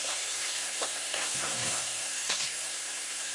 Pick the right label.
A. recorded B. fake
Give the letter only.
B